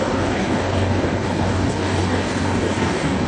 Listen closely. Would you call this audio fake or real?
fake